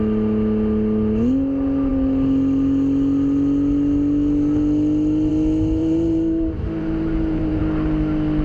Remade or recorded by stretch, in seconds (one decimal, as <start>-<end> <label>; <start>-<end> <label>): 0.0-5.8 recorded; 5.8-7.6 remade; 7.6-8.4 recorded